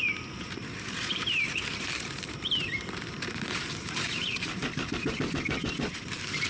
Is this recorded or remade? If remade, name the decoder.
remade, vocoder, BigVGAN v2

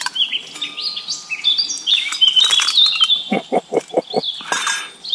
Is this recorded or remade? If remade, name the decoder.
recorded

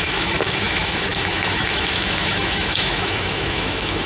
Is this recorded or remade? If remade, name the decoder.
remade, autoencoder, DAC-VAE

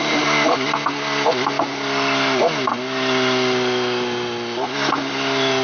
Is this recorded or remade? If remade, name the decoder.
recorded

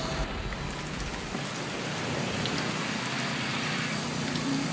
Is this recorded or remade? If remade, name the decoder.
recorded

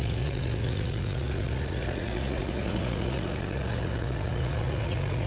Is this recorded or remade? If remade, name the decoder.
remade, vocoder, Vocos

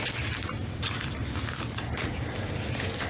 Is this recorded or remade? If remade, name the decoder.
remade, vocoder, BigVGAN v2